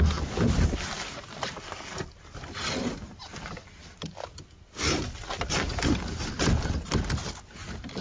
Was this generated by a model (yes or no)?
no